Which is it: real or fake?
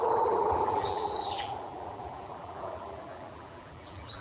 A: fake